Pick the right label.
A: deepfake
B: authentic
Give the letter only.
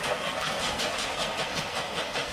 A